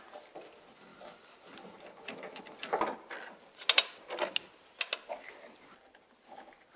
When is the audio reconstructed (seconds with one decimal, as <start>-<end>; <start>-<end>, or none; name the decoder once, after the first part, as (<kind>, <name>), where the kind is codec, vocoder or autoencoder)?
none